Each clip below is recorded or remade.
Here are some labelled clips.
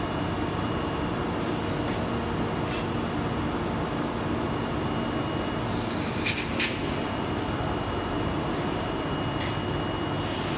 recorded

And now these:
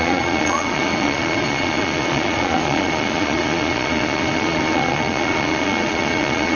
remade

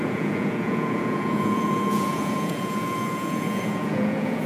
remade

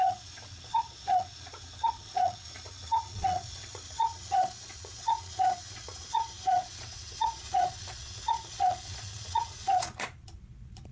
remade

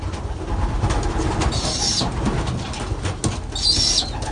recorded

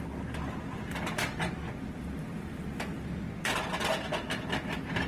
recorded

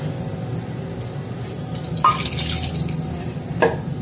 recorded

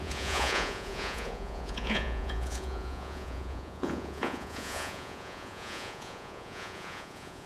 remade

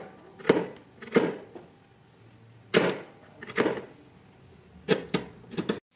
recorded